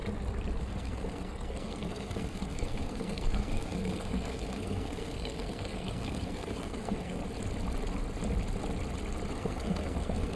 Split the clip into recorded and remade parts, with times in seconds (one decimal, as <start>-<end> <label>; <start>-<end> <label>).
0.0-0.6 recorded; 0.6-7.2 remade; 7.2-9.3 recorded; 9.3-10.4 remade